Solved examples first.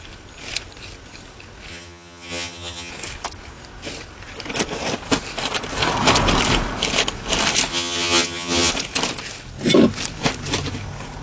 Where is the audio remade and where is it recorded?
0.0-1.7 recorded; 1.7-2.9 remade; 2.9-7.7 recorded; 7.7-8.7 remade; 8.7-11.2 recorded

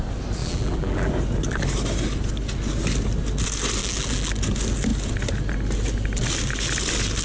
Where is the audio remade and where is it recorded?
0.0-0.4 recorded; 0.4-1.1 remade; 1.1-3.8 recorded; 3.8-4.3 remade; 4.3-7.2 recorded

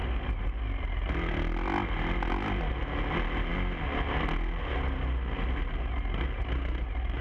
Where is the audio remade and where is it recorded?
0.0-7.2 recorded

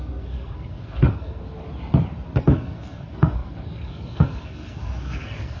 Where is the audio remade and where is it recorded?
0.0-1.4 remade; 1.4-2.4 recorded; 2.4-5.6 remade

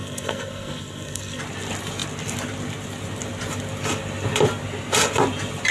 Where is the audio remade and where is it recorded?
0.0-1.4 remade; 1.4-5.7 recorded

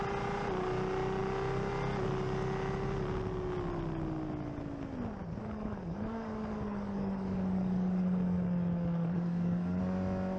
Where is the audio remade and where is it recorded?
0.0-5.4 recorded; 5.4-9.8 remade; 9.8-10.4 recorded